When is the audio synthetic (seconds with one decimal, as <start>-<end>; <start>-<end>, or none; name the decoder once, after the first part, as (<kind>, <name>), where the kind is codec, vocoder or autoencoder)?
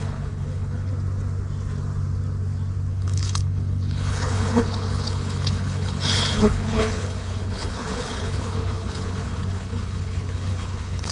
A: 0.0-0.9 (codec, HILCodec); 2.9-11.1